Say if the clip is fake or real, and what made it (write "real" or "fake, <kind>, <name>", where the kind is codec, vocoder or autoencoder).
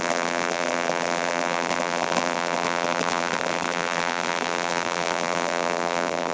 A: fake, vocoder, BigVGAN v2